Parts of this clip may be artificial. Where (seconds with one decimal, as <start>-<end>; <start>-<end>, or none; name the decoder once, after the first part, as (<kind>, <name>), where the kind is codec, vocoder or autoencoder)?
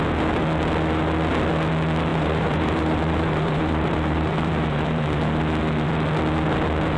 2.1-5.4 (vocoder, BigVGAN v2)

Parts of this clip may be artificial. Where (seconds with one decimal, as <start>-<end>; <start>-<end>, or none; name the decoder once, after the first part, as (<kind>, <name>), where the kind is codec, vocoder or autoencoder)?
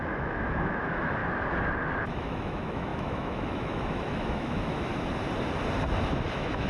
0.0-1.2 (autoencoder, DAC-VAE); 2.0-4.9; 6.3-6.7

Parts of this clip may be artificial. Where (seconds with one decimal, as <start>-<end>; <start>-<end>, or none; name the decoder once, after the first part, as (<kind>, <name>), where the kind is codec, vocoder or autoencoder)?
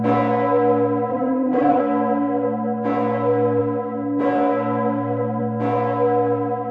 1.1-1.8 (vocoder, Vocos)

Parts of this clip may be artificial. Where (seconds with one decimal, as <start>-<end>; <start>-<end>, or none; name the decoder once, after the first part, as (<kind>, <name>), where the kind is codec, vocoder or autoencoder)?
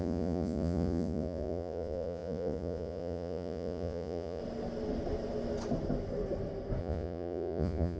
0.0-4.4 (vocoder, Vocos); 6.8-8.0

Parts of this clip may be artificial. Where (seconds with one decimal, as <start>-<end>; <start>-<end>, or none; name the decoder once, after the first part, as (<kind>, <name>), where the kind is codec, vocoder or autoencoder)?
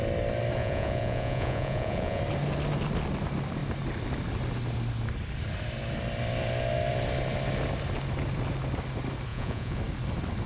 0.6-2.2 (vocoder, Vocos); 9.3-9.8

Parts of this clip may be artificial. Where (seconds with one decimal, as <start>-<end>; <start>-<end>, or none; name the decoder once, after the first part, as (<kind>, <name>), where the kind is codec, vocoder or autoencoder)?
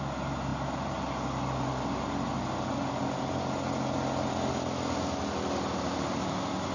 none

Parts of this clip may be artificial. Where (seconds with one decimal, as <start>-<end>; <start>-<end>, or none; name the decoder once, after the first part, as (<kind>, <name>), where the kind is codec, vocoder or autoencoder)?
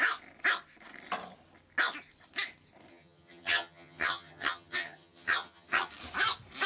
2.9-5.9 (vocoder, HiFi-GAN)